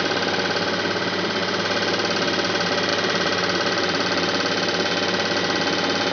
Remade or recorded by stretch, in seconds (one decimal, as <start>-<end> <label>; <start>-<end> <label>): 0.0-2.9 recorded; 2.9-5.4 remade; 5.4-6.1 recorded